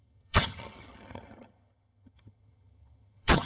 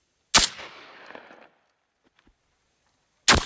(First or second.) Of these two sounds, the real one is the second